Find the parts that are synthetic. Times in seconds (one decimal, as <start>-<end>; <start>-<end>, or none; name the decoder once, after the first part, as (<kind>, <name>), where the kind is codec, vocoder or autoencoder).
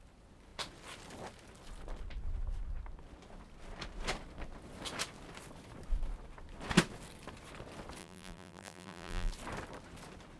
8.0-9.3 (vocoder, BigVGAN v2)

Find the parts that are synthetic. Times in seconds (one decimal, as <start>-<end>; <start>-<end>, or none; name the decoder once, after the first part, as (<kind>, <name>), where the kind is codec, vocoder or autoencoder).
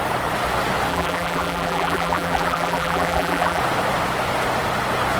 0.9-3.6 (vocoder, BigVGAN v2)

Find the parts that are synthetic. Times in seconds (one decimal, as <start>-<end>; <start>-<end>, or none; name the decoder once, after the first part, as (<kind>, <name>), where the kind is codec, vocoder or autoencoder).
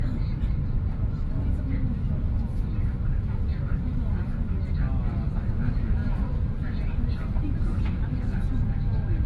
1.0-3.0 (vocoder, BigVGAN v2); 6.0-8.5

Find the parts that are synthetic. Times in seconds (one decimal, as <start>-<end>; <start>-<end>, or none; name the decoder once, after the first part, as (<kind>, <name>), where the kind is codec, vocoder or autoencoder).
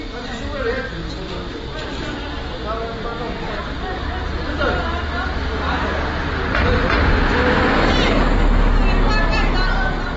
none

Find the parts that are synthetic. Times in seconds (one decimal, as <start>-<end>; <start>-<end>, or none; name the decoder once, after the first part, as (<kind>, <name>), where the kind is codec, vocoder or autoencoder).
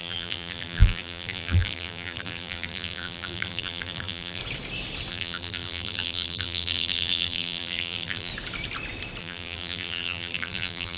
0.0-4.4 (vocoder, BigVGAN v2); 5.1-8.3; 9.2-11.0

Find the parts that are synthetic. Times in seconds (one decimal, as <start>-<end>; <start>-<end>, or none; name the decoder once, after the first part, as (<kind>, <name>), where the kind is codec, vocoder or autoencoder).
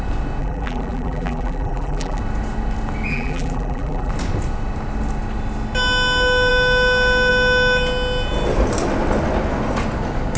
0.4-2.2 (vocoder, BigVGAN v2); 3.1-4.1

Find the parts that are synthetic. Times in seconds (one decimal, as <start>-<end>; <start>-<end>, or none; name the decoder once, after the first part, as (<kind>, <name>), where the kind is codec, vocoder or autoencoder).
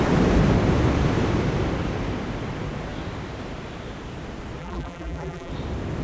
4.6-5.5 (vocoder, BigVGAN v2)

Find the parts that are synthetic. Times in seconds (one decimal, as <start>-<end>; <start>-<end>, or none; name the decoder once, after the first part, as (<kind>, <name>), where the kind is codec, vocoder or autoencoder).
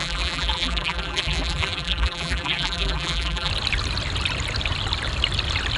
0.0-3.5 (vocoder, BigVGAN v2)